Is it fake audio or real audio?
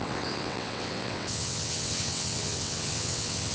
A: fake